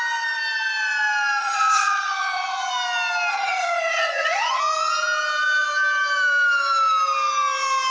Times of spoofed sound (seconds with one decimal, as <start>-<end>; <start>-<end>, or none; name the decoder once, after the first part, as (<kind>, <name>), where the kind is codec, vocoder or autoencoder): 1.4-2.7 (vocoder, HiFi-GAN); 3.3-4.6